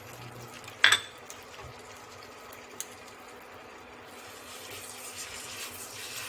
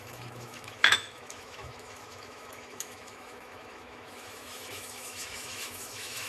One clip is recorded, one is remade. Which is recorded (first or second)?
first